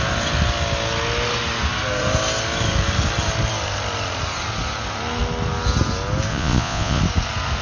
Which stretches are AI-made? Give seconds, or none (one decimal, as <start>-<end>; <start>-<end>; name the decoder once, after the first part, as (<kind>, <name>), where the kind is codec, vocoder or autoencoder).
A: 6.3-7.0 (vocoder, Vocos)